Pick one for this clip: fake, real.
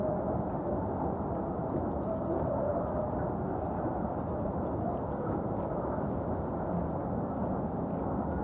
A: real